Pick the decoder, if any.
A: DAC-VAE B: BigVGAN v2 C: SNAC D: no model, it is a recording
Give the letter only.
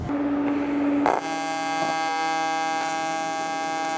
D